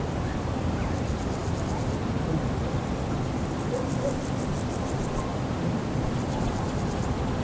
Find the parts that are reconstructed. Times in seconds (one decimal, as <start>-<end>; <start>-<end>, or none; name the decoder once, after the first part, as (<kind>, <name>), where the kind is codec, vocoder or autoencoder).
none